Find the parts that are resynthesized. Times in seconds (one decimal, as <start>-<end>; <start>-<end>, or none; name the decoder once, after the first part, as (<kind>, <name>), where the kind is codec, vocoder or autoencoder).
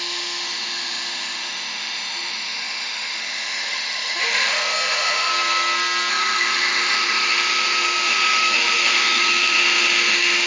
0.0-5.3 (autoencoder, DAC-VAE); 6.1-10.5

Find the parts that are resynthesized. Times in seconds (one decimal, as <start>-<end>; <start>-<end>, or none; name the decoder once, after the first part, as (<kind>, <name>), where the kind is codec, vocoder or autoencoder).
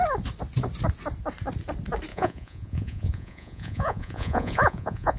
2.1-5.2 (vocoder, Vocos)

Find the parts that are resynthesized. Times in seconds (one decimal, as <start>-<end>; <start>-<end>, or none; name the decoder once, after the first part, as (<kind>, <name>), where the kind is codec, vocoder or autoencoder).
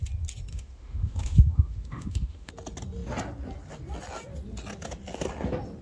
0.5-2.5 (autoencoder, DAC-VAE)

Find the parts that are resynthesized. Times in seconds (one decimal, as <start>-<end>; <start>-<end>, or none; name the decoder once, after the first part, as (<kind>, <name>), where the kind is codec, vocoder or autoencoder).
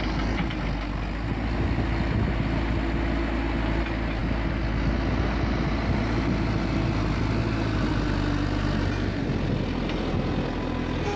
none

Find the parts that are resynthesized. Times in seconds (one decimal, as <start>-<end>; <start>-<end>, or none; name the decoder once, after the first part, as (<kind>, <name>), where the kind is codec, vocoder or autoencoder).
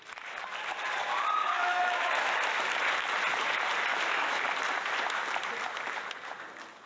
1.4-2.1 (autoencoder, DAC-VAE); 3.9-4.4